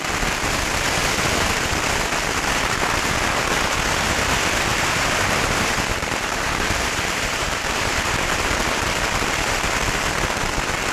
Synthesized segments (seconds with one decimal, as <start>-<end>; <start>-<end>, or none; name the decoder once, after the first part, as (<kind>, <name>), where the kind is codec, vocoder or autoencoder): 4.7-8.6 (vocoder, BigVGAN v2)